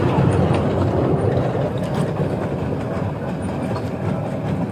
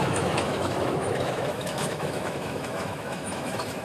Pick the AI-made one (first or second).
second